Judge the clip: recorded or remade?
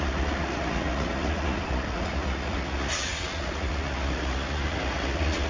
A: remade